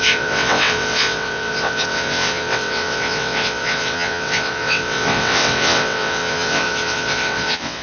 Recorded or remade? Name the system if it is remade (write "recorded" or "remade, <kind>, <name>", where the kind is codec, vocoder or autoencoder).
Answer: remade, vocoder, WaveNeXt